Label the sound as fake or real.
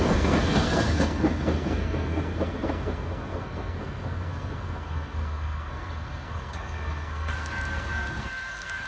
fake